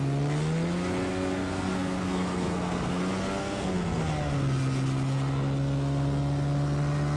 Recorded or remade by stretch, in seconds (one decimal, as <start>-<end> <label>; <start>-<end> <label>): 0.0-1.1 recorded; 1.1-3.0 remade; 3.0-3.4 recorded; 3.4-4.0 remade; 4.0-7.2 recorded